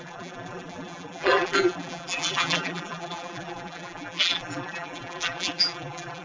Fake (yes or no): yes